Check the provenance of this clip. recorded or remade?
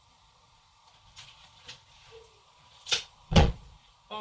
remade